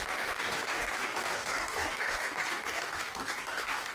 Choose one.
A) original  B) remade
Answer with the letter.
B